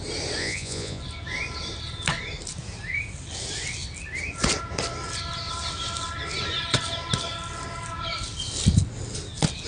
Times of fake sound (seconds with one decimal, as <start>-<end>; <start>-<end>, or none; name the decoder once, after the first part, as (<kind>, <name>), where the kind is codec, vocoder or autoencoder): 0.4-1.0 (vocoder, Vocos)